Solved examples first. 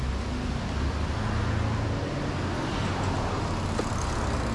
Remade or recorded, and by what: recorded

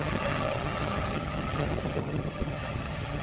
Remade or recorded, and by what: remade, vocoder, HiFi-GAN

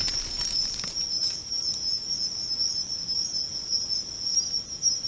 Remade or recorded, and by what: recorded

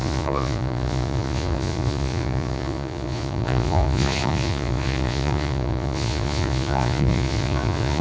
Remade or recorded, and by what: remade, vocoder, Vocos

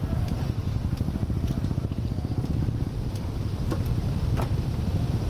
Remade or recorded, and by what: recorded